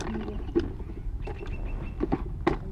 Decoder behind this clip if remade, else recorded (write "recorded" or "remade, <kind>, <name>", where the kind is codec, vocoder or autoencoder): recorded